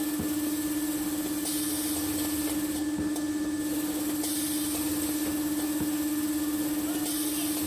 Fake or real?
real